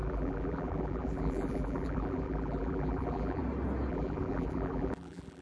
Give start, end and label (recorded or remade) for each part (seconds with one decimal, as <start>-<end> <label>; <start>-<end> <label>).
0.0-3.4 remade; 3.4-3.9 recorded; 3.9-5.4 remade